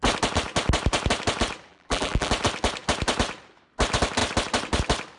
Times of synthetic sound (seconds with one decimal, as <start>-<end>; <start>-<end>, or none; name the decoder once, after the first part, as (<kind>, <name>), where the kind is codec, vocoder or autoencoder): 1.7-2.3 (vocoder, BigVGAN v2)